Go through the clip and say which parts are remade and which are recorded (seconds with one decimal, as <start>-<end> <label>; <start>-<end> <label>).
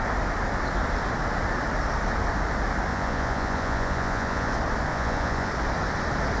0.0-2.9 recorded; 2.9-4.5 remade; 4.5-4.9 recorded; 4.9-5.5 remade; 5.5-6.4 recorded